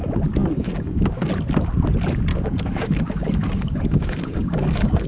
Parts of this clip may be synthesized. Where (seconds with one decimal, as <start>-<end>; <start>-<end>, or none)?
0.4-1.3; 2.3-5.1